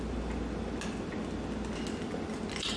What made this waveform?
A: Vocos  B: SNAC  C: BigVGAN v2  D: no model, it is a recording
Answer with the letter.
D